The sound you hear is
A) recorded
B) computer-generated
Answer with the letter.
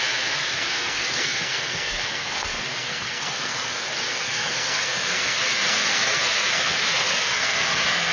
B